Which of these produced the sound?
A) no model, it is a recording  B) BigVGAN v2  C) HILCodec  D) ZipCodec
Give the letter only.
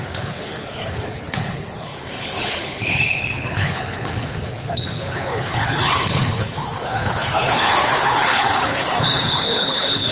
C